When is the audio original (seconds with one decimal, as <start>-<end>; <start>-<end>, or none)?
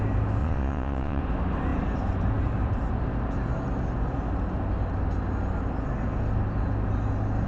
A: 0.0-0.4; 1.2-7.5